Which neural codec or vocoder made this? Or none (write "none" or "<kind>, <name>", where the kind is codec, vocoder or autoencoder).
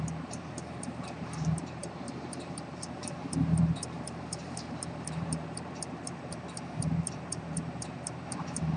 vocoder, BigVGAN v2